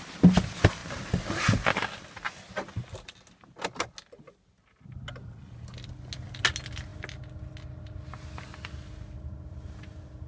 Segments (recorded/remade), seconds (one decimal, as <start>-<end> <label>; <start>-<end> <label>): 0.0-10.3 recorded